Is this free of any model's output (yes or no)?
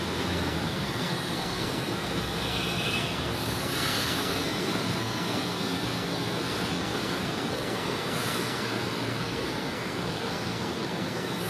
no